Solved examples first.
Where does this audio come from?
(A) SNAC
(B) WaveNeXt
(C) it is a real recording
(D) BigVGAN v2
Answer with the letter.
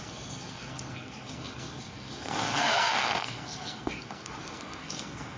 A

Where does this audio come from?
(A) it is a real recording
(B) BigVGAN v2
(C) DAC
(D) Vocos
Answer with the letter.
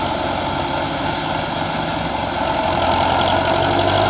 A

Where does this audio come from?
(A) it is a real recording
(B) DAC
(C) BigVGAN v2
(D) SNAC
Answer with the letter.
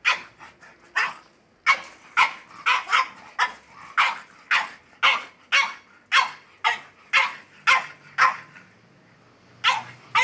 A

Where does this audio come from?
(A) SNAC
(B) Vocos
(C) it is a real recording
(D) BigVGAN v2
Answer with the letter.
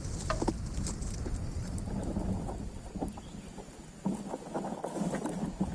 C